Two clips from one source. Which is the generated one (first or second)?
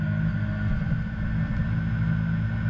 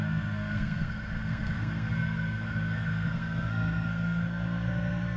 second